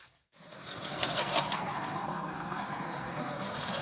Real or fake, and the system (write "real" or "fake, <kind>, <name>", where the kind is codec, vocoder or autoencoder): fake, codec, SNAC